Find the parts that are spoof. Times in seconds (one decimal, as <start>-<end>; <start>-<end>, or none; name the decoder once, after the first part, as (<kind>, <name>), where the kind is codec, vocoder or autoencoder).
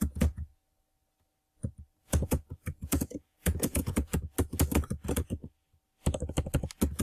0.0-0.5 (vocoder, Vocos); 2.0-4.1